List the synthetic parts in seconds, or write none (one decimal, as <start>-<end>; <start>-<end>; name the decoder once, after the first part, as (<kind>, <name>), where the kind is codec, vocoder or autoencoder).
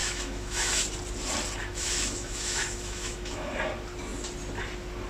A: 0.0-0.8 (autoencoder, DAC-VAE); 1.6-3.5